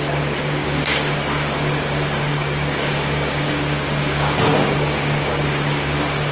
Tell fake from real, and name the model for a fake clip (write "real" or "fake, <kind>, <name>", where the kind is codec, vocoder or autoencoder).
fake, codec, DAC